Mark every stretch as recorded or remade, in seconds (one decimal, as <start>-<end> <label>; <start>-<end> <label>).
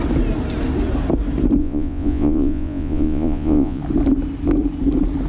0.0-1.6 recorded; 1.6-3.8 remade; 3.8-5.3 recorded